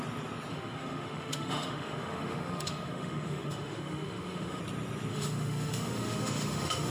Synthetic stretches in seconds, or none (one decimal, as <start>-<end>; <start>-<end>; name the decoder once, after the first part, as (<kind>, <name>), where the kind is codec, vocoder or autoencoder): 0.5-4.6 (autoencoder, DAC-VAE); 5.1-6.9